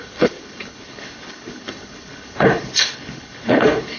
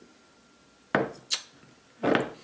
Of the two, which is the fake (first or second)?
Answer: first